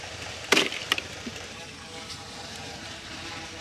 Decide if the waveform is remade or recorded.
remade